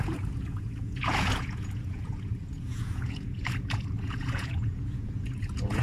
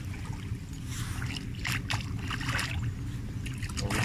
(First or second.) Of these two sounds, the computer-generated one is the first